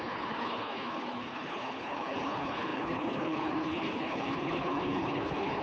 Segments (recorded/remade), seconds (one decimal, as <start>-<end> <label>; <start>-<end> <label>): 0.0-5.6 remade